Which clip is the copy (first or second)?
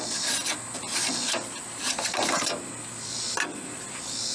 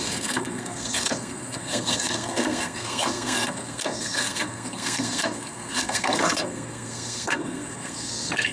second